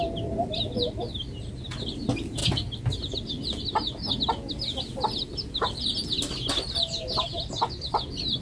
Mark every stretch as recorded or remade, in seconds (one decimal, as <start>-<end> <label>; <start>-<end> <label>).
0.0-8.4 recorded